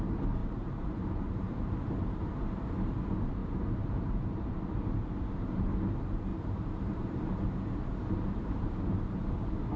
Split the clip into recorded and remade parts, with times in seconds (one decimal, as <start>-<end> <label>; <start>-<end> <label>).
0.0-0.4 recorded; 0.4-2.2 remade; 2.2-3.4 recorded; 3.4-4.4 remade; 4.4-6.3 recorded; 6.3-8.7 remade; 8.7-9.8 recorded